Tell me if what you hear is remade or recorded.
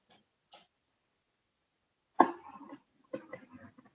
recorded